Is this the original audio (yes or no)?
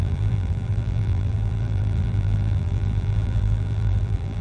no